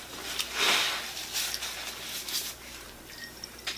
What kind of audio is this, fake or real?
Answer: real